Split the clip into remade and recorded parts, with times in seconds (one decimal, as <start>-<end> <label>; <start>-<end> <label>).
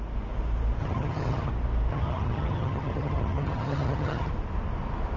0.0-0.8 recorded; 0.8-1.5 remade; 1.5-1.9 recorded; 1.9-4.3 remade; 4.3-5.2 recorded